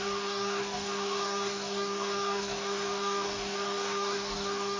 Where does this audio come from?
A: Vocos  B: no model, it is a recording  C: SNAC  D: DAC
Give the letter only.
D